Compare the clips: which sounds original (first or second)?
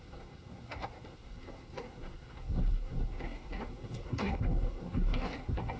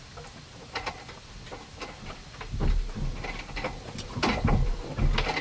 second